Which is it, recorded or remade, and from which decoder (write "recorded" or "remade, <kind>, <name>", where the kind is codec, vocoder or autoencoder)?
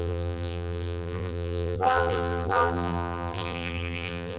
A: remade, vocoder, BigVGAN v2